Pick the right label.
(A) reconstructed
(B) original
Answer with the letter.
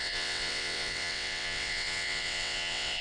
A